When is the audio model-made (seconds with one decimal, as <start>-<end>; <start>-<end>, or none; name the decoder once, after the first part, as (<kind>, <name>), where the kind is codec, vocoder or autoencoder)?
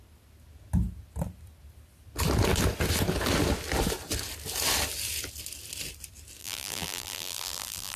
6.4-8.0 (vocoder, BigVGAN v2)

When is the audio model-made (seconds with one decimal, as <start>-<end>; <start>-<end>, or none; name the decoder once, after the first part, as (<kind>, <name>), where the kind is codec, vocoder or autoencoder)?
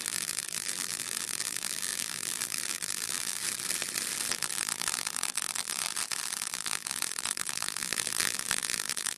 0.0-3.4 (vocoder, BigVGAN v2); 4.3-5.9; 6.4-9.2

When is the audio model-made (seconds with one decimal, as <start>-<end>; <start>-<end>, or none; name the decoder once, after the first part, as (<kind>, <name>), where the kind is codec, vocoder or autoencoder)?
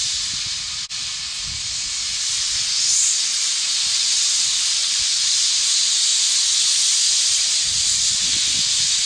4.8-5.5 (vocoder, BigVGAN v2); 6.1-8.1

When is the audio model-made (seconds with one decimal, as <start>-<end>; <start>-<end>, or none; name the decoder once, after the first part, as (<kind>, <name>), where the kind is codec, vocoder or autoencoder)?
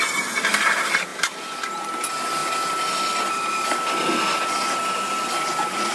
1.1-1.9 (vocoder, BigVGAN v2)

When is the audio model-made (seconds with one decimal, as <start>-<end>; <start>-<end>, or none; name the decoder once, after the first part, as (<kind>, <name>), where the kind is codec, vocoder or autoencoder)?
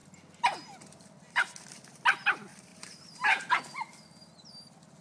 2.7-3.6 (vocoder, BigVGAN v2)